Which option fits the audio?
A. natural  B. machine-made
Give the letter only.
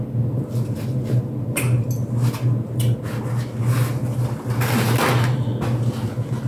A